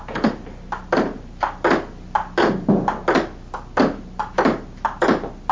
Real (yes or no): yes